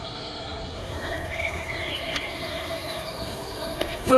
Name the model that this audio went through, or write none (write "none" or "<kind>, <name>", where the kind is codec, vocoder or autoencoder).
codec, SNAC